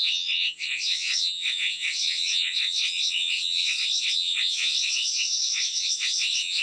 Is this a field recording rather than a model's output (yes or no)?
no